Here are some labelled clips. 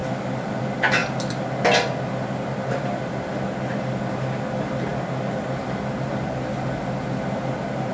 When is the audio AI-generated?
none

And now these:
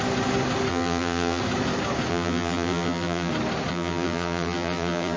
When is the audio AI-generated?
0.7-1.4 (vocoder, BigVGAN v2); 2.1-3.3; 3.7-5.2

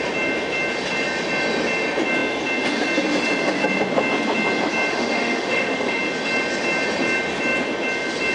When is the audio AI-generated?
4.9-6.0 (autoencoder, DAC-VAE)

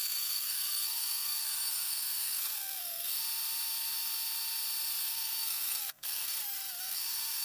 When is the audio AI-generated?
0.0-3.2 (codec, SNAC); 5.0-6.3; 6.8-7.4

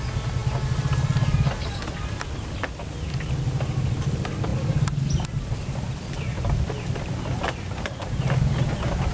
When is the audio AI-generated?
none

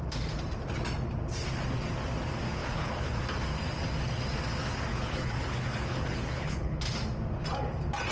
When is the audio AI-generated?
2.6-3.2 (codec, HILCodec); 4.9-6.8

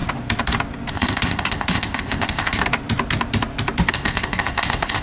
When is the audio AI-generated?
0.9-2.6 (codec, ZipCodec); 3.9-5.0